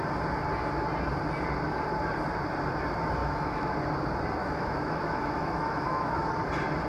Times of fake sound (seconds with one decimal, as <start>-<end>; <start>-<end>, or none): 3.2-3.7; 4.4-6.3